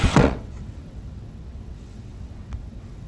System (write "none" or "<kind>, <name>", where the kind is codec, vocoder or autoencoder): vocoder, WaveNeXt